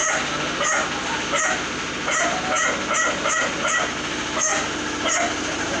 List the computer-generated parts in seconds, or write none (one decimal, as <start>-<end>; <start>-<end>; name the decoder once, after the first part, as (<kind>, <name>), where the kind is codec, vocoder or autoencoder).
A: none